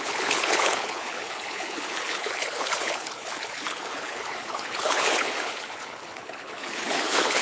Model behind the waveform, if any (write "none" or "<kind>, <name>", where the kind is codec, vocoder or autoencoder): codec, HILCodec